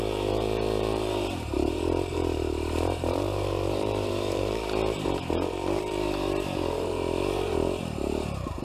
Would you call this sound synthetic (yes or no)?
yes